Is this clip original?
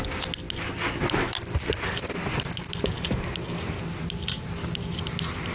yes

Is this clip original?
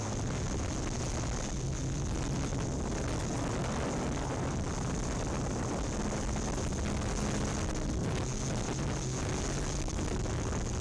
yes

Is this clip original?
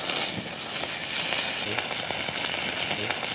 yes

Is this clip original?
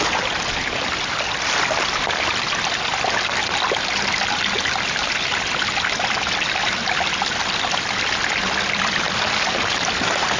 yes